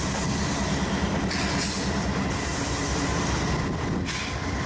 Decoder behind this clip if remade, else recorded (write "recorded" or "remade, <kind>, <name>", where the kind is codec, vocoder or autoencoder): recorded